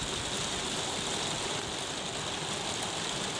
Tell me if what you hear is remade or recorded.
recorded